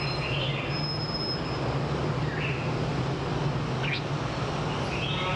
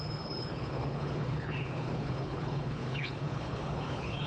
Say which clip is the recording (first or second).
first